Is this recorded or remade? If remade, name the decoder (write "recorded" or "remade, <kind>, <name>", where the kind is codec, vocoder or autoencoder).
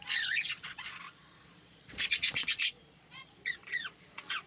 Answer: remade, vocoder, Vocos